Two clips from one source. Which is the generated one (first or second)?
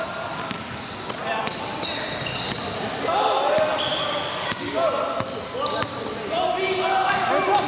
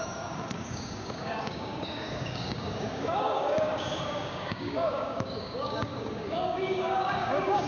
second